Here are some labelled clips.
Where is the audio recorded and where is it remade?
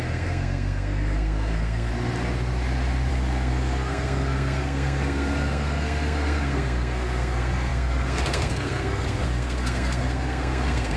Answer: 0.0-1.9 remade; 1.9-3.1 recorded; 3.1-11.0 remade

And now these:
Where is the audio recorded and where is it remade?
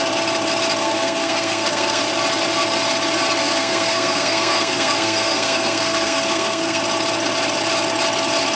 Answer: 0.0-0.8 recorded; 0.8-2.0 remade; 2.0-3.4 recorded; 3.4-6.8 remade; 6.8-8.5 recorded